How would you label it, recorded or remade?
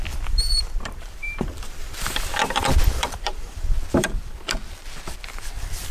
remade